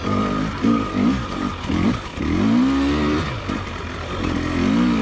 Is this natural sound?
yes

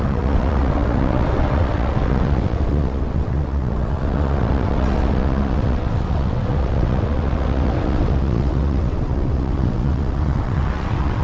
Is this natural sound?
no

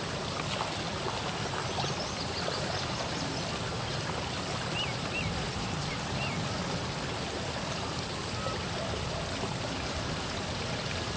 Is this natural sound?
yes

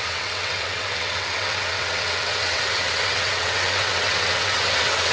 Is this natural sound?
no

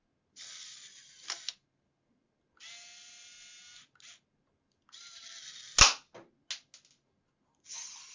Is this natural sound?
yes